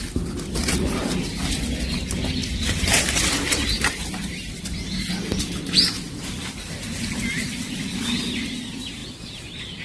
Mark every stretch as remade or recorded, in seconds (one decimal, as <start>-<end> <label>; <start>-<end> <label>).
0.0-9.8 recorded